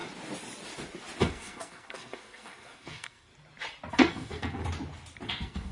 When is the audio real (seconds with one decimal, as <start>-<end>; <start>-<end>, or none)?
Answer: 0.0-1.2; 3.3-3.9; 4.6-5.3